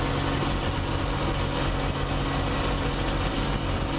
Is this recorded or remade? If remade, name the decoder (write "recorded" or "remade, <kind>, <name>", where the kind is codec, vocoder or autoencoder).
recorded